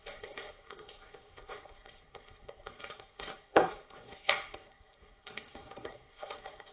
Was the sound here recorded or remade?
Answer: remade